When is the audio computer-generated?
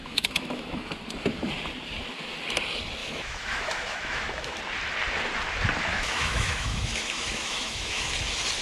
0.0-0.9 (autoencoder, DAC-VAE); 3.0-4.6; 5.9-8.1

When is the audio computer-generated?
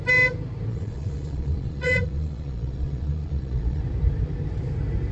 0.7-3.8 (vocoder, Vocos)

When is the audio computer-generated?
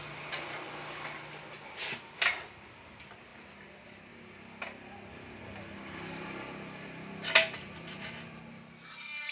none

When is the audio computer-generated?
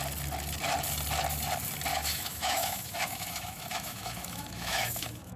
1.9-5.4 (autoencoder, DAC-VAE)